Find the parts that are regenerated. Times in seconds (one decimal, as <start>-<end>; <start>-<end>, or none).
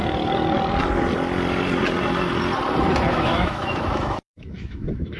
3.1-5.2